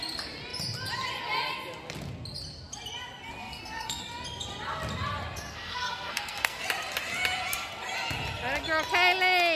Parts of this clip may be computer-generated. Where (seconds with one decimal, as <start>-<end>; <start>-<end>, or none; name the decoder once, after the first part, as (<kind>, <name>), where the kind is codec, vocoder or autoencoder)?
3.4-4.0 (codec, SNAC); 5.5-6.6